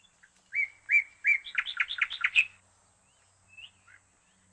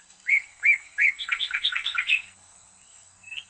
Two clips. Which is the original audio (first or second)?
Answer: first